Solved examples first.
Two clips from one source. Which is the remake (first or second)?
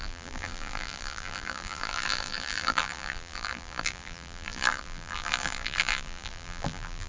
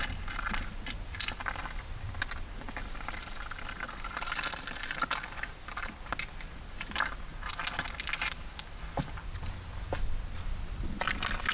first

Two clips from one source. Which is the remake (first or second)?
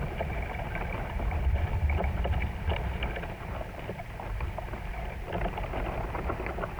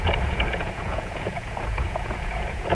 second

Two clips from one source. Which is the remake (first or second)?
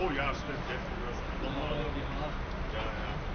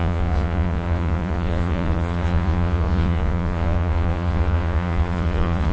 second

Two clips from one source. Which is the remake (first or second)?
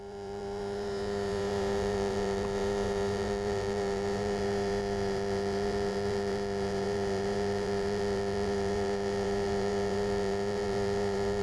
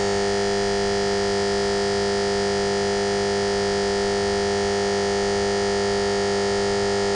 first